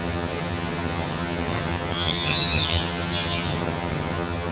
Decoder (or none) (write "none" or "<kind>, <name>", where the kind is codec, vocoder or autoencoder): vocoder, HiFi-GAN